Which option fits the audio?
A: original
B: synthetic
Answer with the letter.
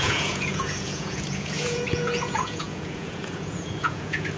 B